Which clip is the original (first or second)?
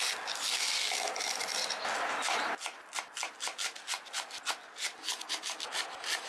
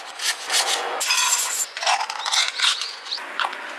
first